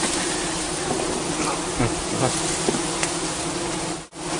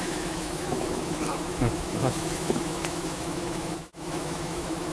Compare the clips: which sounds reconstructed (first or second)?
second